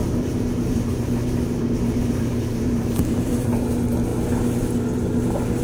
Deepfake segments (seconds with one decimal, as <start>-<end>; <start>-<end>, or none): 0.0-3.4